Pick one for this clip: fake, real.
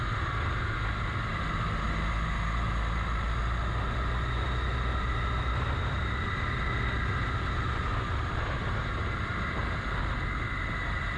real